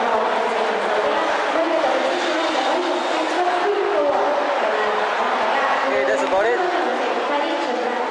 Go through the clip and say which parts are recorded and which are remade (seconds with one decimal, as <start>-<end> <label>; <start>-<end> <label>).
0.0-8.1 recorded